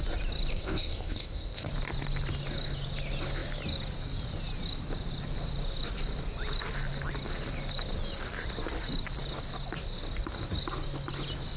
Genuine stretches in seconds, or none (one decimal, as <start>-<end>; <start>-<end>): 0.0-0.5; 1.7-11.6